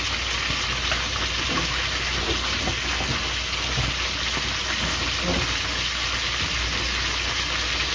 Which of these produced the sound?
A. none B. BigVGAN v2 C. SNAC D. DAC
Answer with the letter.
A